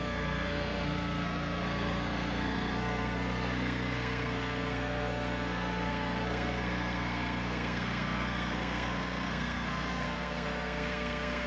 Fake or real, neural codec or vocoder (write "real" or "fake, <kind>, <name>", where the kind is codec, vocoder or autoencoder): fake, codec, SNAC